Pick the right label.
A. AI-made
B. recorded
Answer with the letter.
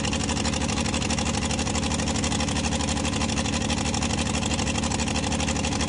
B